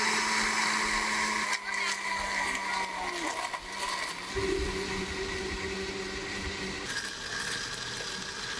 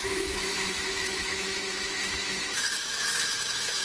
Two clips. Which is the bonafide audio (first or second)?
first